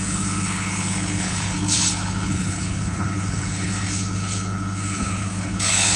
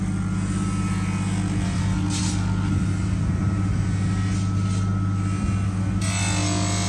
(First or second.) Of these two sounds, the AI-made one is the first